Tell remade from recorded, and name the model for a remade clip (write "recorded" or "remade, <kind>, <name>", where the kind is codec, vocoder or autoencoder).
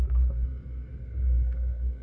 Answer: remade, codec, SNAC